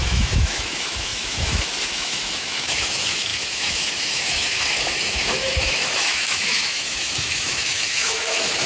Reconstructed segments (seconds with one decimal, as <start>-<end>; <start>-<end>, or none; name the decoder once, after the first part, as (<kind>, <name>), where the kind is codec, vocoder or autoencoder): 0.0-8.7 (autoencoder, DAC-VAE)